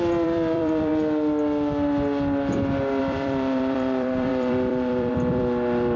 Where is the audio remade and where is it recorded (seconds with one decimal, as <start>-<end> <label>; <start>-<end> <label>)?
0.0-0.9 remade; 0.9-3.0 recorded; 3.0-6.0 remade